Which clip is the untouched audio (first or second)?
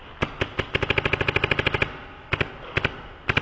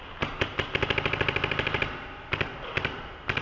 first